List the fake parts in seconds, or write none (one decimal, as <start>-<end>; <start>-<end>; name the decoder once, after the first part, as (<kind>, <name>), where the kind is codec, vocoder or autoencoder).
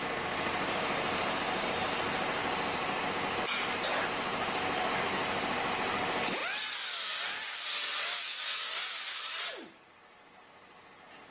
none